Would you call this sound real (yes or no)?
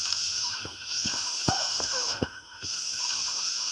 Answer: no